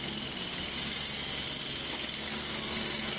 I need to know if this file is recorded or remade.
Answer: recorded